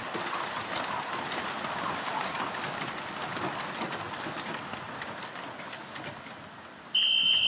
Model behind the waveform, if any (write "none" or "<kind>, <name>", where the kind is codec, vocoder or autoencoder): none